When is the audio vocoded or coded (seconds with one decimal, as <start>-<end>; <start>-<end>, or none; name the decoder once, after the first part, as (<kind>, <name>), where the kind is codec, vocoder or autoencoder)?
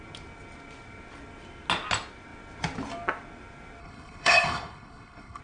3.8-5.4 (codec, HILCodec)